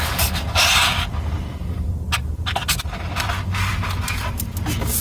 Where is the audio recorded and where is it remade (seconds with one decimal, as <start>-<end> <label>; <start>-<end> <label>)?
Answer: 0.0-5.0 recorded